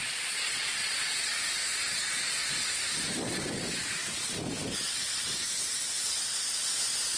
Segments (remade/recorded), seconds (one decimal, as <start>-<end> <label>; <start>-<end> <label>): 0.0-1.3 remade; 1.3-7.2 recorded